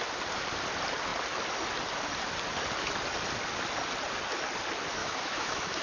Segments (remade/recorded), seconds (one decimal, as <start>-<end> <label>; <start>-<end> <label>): 0.0-5.0 recorded; 5.0-5.8 remade

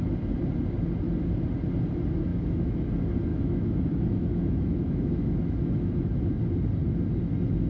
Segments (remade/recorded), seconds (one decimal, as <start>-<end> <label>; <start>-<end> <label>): 0.0-2.3 recorded; 2.3-2.9 remade; 2.9-3.3 recorded; 3.3-6.4 remade; 6.4-7.7 recorded

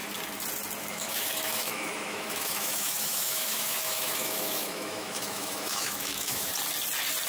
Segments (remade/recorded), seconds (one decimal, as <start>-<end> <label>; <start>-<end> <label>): 0.0-0.8 recorded; 0.8-6.5 remade; 6.5-7.3 recorded

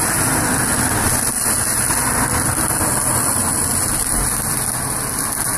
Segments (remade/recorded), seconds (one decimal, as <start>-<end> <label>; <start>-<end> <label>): 0.0-5.6 recorded

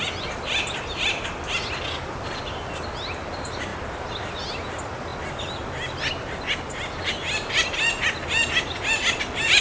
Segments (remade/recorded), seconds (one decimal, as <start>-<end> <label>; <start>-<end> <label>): 0.0-9.6 recorded

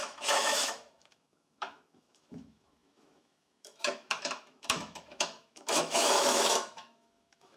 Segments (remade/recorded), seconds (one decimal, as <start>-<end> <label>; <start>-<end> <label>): 0.0-7.6 remade